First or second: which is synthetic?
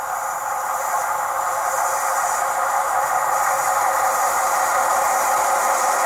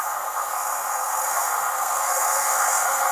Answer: second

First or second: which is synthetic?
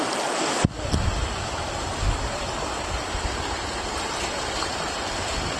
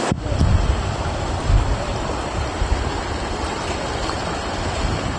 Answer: second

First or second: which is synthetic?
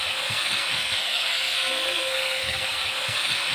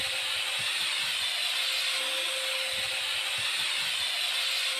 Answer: first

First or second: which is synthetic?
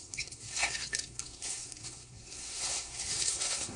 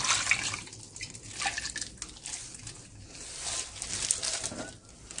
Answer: first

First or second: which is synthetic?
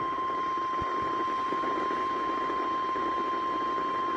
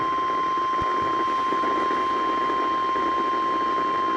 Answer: first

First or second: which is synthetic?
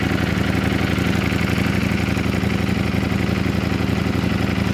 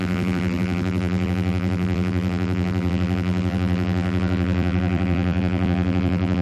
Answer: second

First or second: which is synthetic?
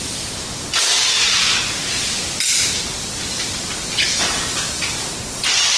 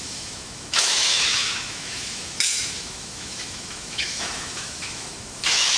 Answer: second